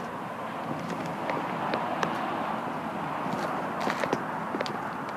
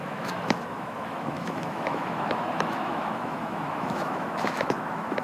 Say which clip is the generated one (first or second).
second